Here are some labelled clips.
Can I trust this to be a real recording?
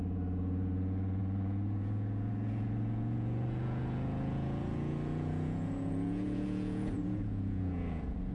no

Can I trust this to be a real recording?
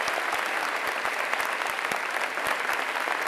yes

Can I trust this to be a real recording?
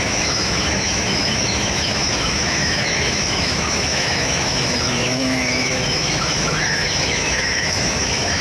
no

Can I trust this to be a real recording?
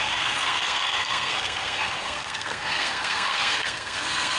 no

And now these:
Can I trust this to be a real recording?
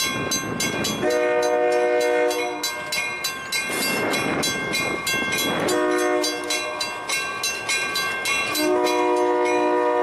yes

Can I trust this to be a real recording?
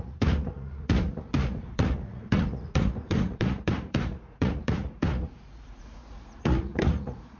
no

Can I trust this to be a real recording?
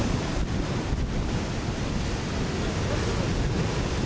yes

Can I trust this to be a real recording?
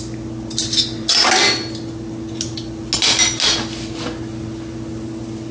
yes